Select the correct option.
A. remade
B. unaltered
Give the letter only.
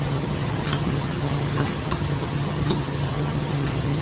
A